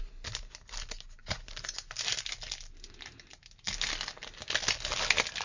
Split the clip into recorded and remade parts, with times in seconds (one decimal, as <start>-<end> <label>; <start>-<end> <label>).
0.0-5.4 recorded